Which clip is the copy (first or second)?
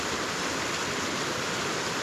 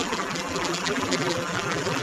second